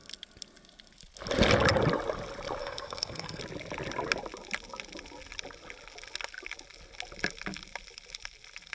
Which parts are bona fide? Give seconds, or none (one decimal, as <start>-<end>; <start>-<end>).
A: 0.0-2.6; 3.4-8.7